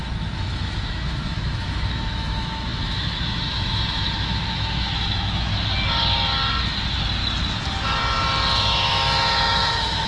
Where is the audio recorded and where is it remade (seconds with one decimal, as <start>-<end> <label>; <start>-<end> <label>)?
0.0-5.5 remade; 5.5-8.6 recorded; 8.6-10.1 remade